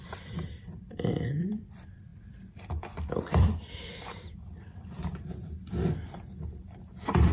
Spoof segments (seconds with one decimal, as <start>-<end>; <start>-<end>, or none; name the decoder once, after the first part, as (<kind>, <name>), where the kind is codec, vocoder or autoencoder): 0.0-7.3 (vocoder, BigVGAN v2)